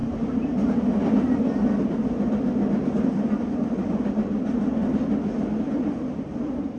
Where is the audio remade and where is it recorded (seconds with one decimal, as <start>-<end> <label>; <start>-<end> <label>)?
0.0-6.8 recorded